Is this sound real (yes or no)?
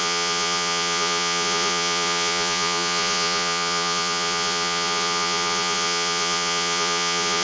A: no